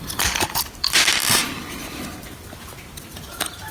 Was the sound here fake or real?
fake